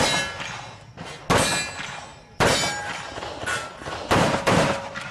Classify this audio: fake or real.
real